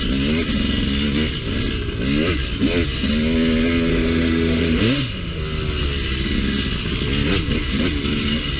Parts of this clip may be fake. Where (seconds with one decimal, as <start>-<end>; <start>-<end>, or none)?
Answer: 3.9-5.4